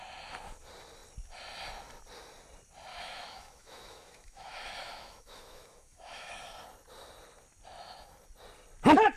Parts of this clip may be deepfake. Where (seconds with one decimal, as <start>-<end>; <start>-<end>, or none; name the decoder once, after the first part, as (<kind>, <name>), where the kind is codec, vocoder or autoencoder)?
2.9-6.3 (autoencoder, DAC-VAE)